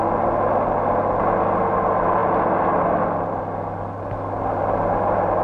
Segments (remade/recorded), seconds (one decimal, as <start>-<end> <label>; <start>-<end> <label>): 0.0-5.4 recorded